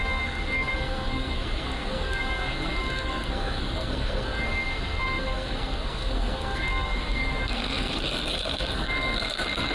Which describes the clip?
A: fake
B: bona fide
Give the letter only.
A